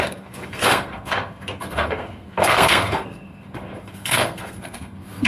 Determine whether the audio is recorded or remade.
remade